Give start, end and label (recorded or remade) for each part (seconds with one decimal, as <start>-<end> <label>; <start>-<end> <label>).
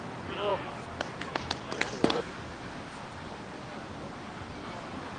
0.0-5.2 recorded